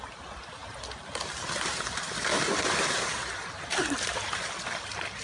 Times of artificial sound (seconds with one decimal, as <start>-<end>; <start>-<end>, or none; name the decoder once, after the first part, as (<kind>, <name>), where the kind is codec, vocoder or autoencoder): none